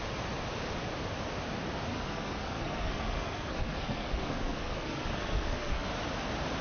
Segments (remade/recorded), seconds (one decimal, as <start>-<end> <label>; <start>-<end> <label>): 0.0-1.9 recorded; 1.9-5.9 remade; 5.9-6.6 recorded